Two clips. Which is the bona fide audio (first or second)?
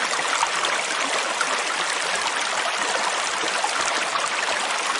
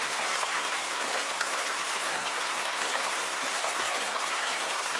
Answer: first